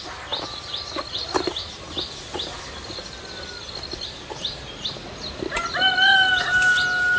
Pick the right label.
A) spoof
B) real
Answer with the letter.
B